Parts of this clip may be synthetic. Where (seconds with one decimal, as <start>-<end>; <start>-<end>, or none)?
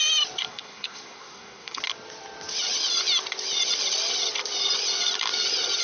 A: 0.5-1.8